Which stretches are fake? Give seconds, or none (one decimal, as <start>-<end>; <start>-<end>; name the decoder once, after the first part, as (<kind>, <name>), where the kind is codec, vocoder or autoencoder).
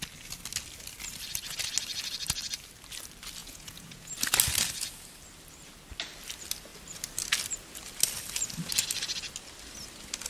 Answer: 3.4-4.1 (vocoder, Vocos)